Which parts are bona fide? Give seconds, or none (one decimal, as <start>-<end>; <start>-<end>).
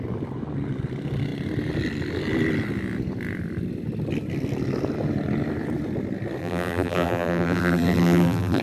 0.0-6.4